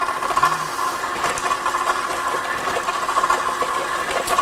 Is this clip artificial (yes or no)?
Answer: no